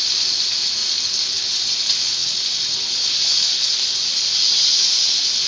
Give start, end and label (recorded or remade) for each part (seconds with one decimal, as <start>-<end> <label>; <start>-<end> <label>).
0.0-5.5 recorded